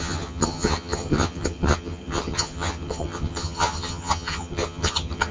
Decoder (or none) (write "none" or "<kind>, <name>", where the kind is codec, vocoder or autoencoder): vocoder, HiFi-GAN